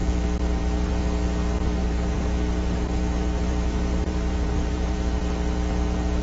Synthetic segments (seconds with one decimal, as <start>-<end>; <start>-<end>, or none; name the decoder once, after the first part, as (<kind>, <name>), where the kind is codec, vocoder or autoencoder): 1.8-5.2 (vocoder, BigVGAN v2)